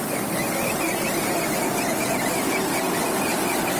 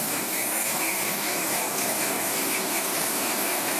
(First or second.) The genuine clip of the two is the first